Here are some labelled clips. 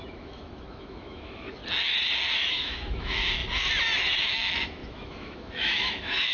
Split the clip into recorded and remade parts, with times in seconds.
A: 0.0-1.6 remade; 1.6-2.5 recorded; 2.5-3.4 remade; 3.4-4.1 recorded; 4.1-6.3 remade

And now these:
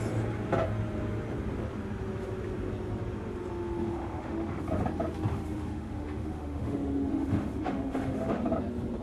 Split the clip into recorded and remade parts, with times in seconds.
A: 0.0-3.8 recorded; 3.8-4.6 remade; 4.6-5.3 recorded; 5.3-8.4 remade; 8.4-9.0 recorded